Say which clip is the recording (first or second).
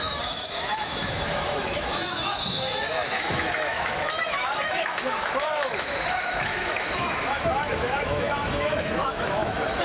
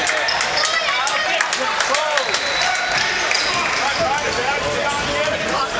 second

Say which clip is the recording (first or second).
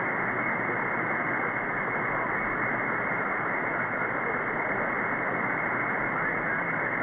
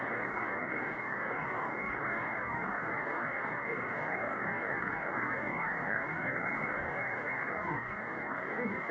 first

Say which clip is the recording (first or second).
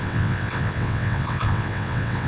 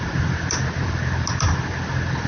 second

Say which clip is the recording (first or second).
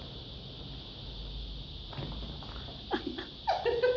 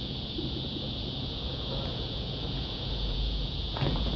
first